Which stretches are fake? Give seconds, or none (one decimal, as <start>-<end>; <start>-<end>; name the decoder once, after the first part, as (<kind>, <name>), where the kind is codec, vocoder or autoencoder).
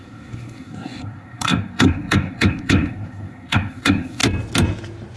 0.0-4.2 (codec, SNAC)